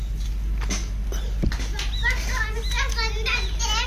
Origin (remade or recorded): recorded